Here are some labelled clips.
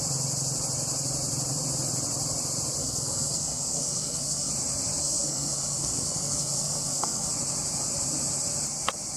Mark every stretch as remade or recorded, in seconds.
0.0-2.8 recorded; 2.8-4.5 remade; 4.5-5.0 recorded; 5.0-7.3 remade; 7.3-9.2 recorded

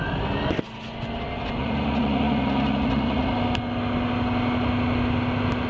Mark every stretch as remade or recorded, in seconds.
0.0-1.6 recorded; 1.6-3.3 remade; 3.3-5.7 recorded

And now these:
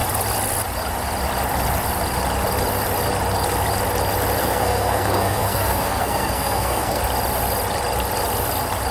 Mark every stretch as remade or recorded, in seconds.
0.0-4.4 recorded; 4.4-7.0 remade; 7.0-8.9 recorded